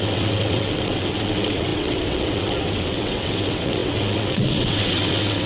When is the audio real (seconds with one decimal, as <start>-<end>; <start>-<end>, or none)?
none